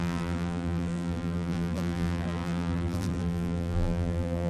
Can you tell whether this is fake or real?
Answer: fake